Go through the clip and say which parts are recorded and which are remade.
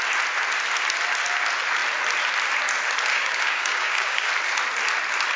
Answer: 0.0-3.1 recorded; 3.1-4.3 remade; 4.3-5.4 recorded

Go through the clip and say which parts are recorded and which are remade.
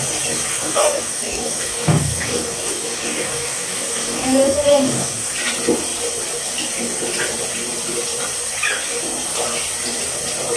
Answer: 0.0-0.5 recorded; 0.5-5.3 remade; 5.3-10.6 recorded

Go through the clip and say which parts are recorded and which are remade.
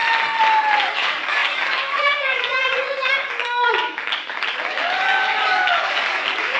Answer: 0.0-0.9 recorded; 0.9-6.6 remade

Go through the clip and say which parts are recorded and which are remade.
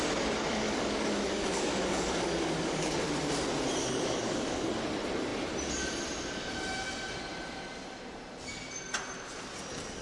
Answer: 0.0-0.5 recorded; 0.5-3.0 remade; 3.0-3.8 recorded; 3.8-4.7 remade; 4.7-10.0 recorded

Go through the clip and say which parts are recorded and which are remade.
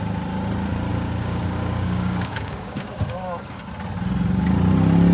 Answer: 0.0-0.9 recorded; 0.9-3.6 remade; 3.6-5.1 recorded